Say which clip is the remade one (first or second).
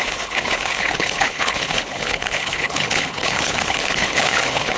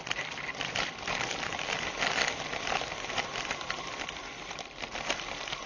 first